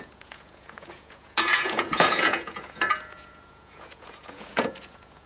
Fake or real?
fake